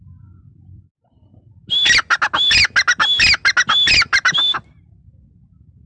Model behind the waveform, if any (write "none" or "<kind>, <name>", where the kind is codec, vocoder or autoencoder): none